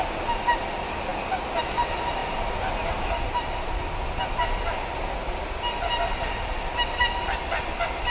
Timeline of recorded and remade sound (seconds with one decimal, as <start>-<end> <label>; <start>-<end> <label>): 0.0-8.1 recorded